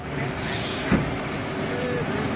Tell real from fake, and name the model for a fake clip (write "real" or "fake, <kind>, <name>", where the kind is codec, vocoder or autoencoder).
real